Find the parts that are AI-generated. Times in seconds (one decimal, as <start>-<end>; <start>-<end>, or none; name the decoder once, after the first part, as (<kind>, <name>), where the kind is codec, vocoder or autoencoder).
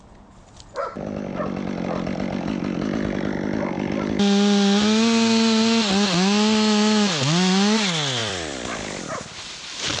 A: 8.2-9.0 (vocoder, BigVGAN v2)